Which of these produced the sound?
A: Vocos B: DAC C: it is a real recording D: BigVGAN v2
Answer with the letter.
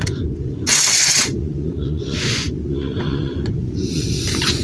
A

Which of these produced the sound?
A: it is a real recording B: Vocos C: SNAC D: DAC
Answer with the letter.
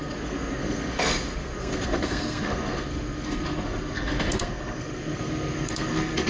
C